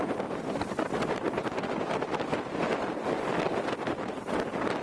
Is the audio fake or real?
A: real